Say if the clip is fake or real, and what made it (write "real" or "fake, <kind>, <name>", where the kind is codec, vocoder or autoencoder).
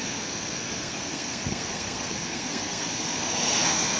fake, codec, SNAC